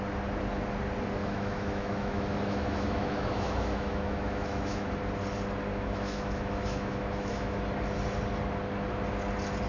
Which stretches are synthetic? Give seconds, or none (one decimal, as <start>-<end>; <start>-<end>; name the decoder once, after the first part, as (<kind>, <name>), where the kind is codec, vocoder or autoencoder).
1.2-4.9 (autoencoder, DAC-VAE); 5.7-7.6